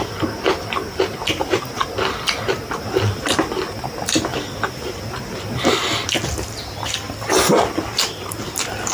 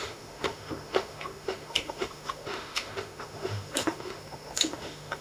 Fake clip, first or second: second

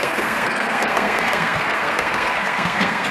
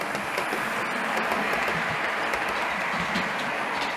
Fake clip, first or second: first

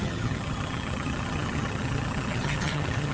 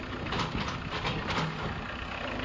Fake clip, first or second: first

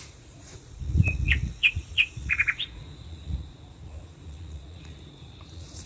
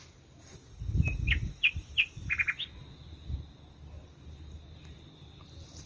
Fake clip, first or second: first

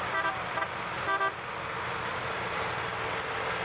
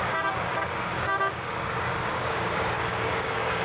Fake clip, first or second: second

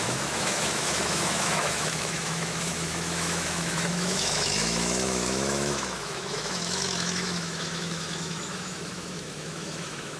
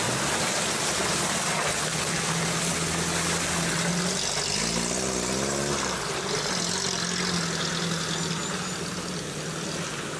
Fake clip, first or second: first